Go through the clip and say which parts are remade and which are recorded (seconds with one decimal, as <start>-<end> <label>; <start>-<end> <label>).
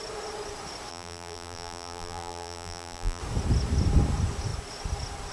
0.0-0.9 recorded; 0.9-3.2 remade; 3.2-5.3 recorded